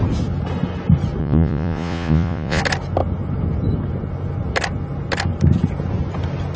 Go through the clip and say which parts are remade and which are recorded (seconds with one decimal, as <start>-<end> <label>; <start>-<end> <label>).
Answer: 0.0-1.2 recorded; 1.2-2.6 remade; 2.6-6.6 recorded